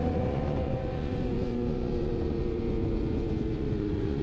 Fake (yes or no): yes